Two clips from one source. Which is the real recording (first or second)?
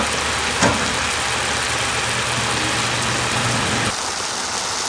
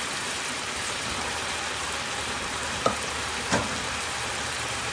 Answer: first